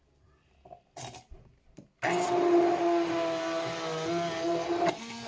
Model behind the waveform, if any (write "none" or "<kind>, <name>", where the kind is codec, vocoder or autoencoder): none